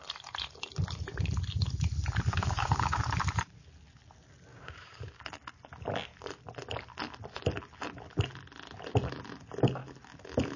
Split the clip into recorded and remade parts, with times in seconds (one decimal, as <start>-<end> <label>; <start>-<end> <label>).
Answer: 0.0-2.3 recorded; 2.3-3.0 remade; 3.0-4.5 recorded; 4.5-5.3 remade; 5.3-10.6 recorded